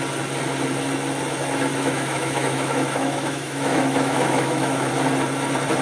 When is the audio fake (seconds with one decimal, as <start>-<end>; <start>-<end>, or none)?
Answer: 1.7-4.9

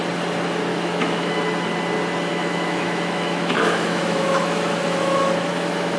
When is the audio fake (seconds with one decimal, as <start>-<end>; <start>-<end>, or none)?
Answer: 0.7-1.3; 2.3-6.0

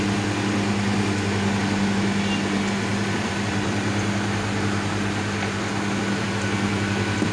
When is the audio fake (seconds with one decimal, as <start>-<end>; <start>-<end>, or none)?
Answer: 2.9-6.0

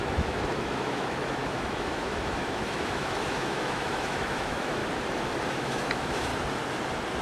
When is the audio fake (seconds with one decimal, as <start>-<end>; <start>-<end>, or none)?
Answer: 0.0-4.8; 5.5-6.3

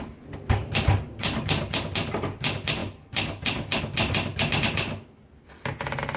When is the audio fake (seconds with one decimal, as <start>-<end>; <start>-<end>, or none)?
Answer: 0.6-1.8; 2.8-3.8

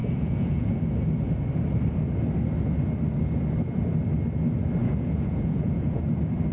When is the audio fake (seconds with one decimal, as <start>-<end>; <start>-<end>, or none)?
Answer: 0.0-0.8; 4.8-6.0

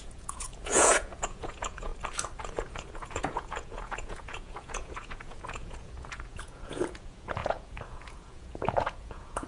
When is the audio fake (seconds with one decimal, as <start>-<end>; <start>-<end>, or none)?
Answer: 0.0-1.9; 2.4-9.5

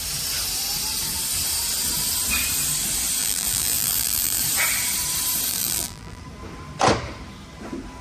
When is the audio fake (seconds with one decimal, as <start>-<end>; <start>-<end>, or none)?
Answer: 3.2-4.4; 5.5-6.2